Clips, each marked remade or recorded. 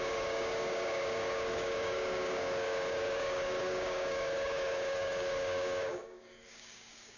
remade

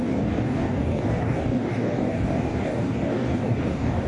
remade